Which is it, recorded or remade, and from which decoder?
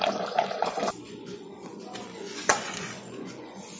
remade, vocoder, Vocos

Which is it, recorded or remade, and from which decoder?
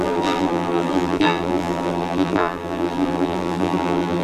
remade, vocoder, BigVGAN v2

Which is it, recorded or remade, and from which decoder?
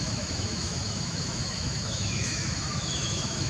remade, autoencoder, DAC-VAE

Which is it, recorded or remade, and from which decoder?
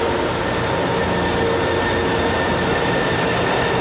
recorded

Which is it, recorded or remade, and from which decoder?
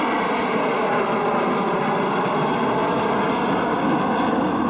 recorded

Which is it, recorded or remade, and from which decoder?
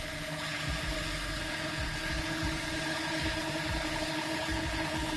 remade, codec, HILCodec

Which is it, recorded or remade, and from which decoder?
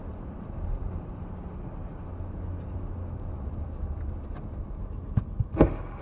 recorded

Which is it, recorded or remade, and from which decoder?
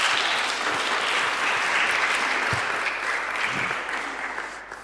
recorded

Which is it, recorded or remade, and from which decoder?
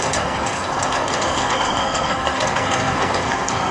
remade, codec, SNAC